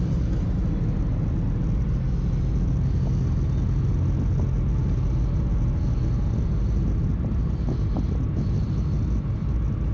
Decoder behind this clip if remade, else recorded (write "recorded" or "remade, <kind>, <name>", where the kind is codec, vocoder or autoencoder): recorded